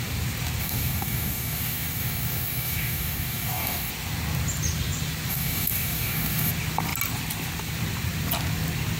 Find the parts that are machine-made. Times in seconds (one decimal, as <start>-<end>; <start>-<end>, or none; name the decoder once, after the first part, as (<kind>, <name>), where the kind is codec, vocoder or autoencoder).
0.6-3.9 (codec, DAC); 5.3-6.5